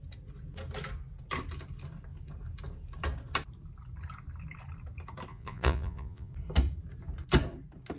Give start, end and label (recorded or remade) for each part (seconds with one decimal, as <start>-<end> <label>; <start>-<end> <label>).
0.0-5.3 recorded; 5.3-6.3 remade; 6.3-8.0 recorded